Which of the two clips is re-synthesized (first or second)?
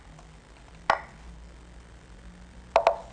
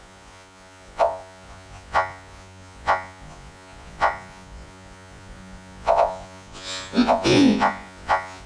second